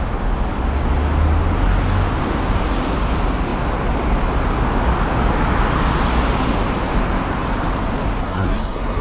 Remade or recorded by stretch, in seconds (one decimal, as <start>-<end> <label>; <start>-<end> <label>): 0.0-8.2 recorded; 8.2-9.0 remade